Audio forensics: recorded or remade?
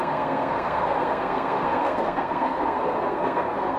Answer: remade